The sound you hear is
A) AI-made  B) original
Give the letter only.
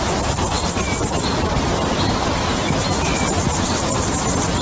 B